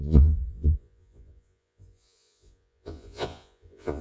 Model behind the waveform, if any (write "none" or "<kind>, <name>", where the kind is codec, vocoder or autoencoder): vocoder, Vocos